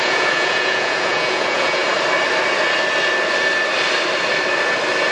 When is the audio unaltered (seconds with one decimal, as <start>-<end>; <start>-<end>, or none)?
1.8-5.1